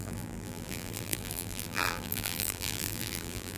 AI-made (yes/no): yes